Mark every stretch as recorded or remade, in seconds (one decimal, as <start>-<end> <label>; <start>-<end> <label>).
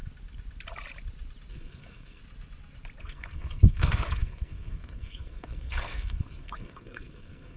0.0-1.5 recorded; 1.5-2.2 remade; 2.2-3.0 recorded; 3.0-7.6 remade